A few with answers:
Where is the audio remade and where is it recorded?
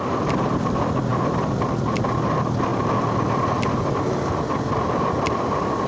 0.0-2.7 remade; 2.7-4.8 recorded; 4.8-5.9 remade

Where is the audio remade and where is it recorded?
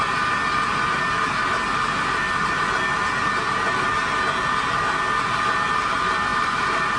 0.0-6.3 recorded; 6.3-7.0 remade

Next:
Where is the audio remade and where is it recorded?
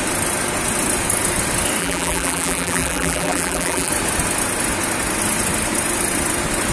0.0-1.8 recorded; 1.8-3.9 remade; 3.9-6.7 recorded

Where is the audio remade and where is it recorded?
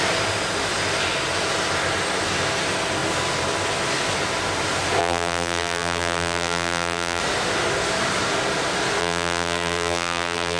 0.0-5.0 recorded; 5.0-7.2 remade; 7.2-9.0 recorded; 9.0-10.6 remade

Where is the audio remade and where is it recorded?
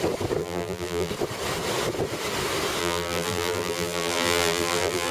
0.0-0.4 recorded; 0.4-1.1 remade; 1.1-2.8 recorded; 2.8-5.1 remade